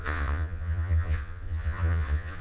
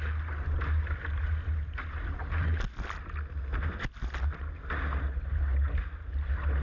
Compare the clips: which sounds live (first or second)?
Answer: second